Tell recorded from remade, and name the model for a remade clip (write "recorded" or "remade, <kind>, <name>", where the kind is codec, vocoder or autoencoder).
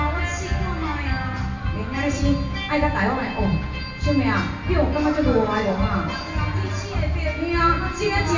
recorded